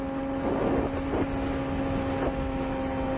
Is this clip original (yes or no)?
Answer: yes